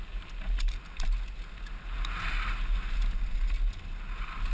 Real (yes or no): yes